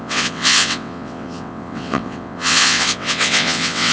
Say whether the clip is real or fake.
fake